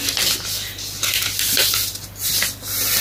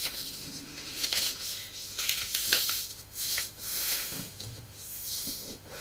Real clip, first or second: first